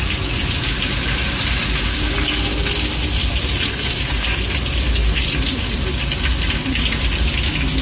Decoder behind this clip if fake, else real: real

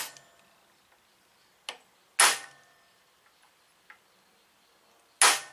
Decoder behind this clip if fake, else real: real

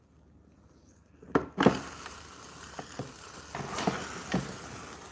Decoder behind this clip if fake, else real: real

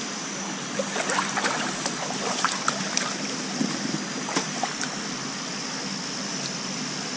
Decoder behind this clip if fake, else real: real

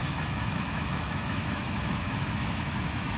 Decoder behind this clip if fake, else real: fake, autoencoder, DAC-VAE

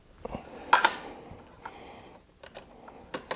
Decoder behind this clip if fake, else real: real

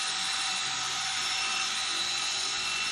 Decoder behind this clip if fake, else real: fake, vocoder, Vocos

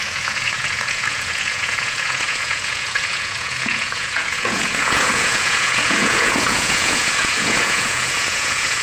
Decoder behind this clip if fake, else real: fake, vocoder, Vocos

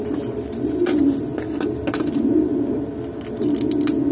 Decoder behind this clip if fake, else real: real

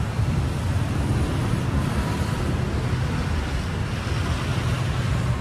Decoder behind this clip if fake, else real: real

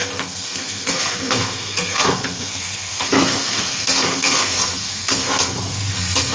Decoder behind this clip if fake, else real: fake, codec, SNAC